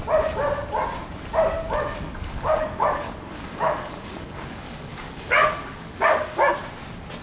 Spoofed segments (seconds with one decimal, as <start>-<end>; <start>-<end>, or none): 2.2-6.5